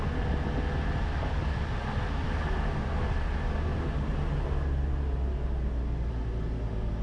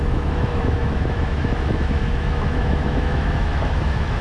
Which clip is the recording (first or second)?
first